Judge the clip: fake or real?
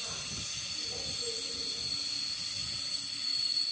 real